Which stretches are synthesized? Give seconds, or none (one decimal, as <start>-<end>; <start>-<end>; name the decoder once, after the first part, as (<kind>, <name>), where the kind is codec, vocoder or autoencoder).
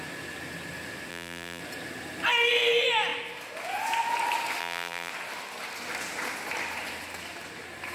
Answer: 1.1-1.6 (vocoder, BigVGAN v2); 4.6-5.1